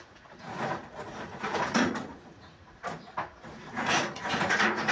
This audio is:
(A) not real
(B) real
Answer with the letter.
A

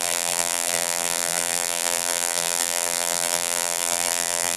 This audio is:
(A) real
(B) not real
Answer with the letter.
B